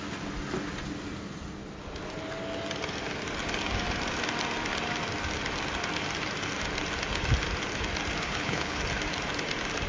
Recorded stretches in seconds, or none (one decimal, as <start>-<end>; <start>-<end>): 0.0-8.2; 8.8-9.9